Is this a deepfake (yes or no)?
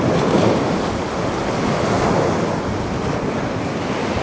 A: no